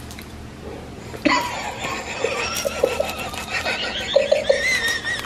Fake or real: real